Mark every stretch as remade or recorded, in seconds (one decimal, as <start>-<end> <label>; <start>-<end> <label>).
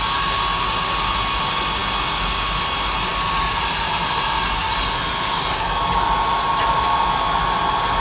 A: 0.0-8.0 recorded